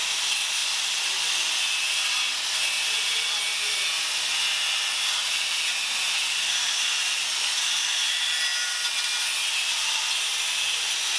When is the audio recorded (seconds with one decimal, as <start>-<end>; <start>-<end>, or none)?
0.0-11.2